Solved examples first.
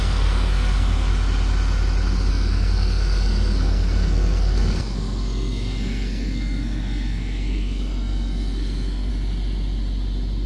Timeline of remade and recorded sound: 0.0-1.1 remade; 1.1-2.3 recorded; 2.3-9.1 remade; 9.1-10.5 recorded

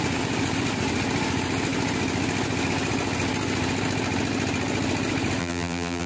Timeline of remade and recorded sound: 0.0-5.4 recorded; 5.4-6.1 remade

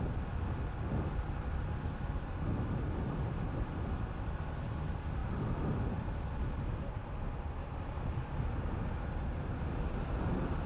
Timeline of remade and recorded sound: 0.0-7.0 recorded; 7.0-7.9 remade; 7.9-10.7 recorded

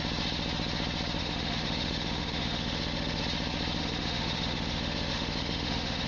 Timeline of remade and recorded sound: 0.0-1.2 recorded; 1.2-3.2 remade; 3.2-3.8 recorded; 3.8-6.1 remade

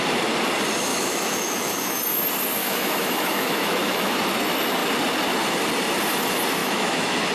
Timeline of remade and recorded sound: 0.0-0.9 recorded; 0.9-2.0 remade; 2.0-2.6 recorded; 2.6-4.2 remade; 4.2-6.6 recorded; 6.6-7.3 remade

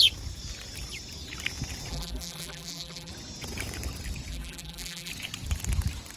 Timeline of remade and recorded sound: 0.0-1.9 recorded; 1.9-3.1 remade; 3.1-4.3 recorded; 4.3-5.1 remade; 5.1-6.2 recorded

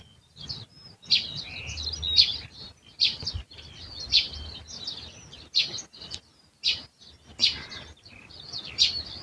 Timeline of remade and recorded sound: 0.0-7.4 recorded; 7.4-8.3 remade; 8.3-9.2 recorded